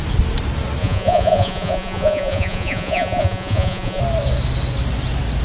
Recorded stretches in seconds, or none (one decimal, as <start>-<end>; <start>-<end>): 0.0-0.8; 4.0-5.4

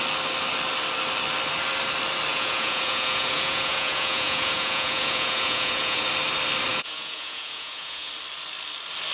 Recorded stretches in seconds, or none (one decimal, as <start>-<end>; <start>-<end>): 0.0-2.3; 6.1-6.7; 8.1-9.1

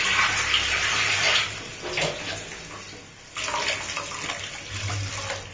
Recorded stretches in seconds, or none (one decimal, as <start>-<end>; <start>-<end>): 0.0-5.5

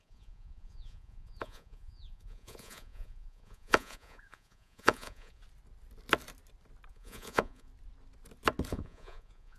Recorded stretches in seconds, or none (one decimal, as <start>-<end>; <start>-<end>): 5.4-6.9; 7.7-8.7

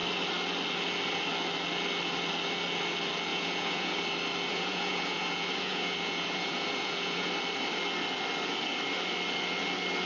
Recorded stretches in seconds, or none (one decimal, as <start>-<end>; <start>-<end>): 0.0-3.3; 4.0-4.5; 7.3-10.1

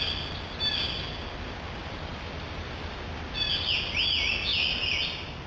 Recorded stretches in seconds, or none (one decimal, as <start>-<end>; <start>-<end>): 0.0-5.5